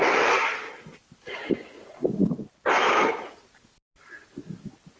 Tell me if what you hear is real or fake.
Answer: real